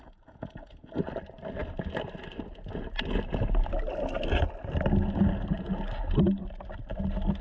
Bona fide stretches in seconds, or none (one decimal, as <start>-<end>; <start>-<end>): 0.0-7.4